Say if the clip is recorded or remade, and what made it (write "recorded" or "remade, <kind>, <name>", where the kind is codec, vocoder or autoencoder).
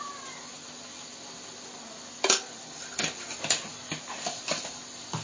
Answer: recorded